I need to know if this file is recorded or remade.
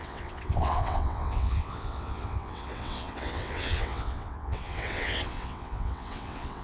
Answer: remade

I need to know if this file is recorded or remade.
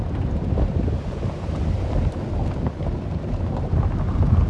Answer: recorded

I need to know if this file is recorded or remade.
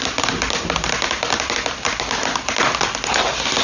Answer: recorded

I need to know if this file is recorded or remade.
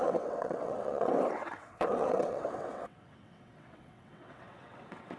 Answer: remade